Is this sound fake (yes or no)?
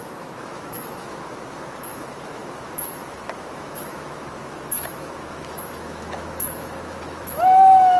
yes